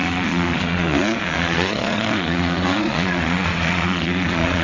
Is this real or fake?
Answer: fake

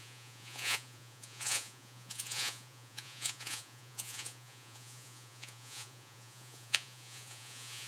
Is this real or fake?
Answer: fake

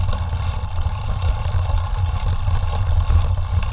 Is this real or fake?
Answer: real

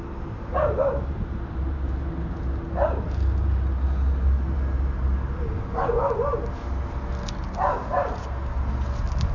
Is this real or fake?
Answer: real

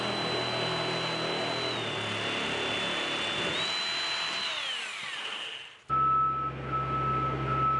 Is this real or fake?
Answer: real